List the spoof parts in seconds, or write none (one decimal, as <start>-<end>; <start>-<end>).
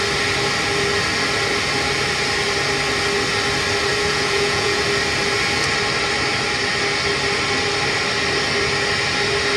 3.9-4.8